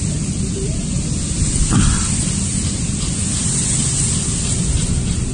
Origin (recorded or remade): recorded